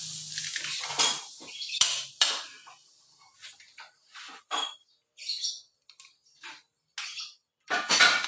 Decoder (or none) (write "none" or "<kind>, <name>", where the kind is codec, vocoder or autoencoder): none